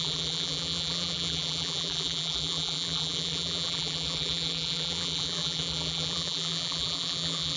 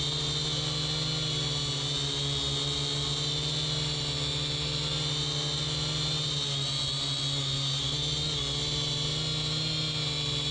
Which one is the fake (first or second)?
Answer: first